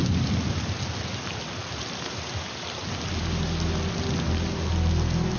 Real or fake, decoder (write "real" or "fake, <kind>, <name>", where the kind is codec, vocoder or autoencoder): real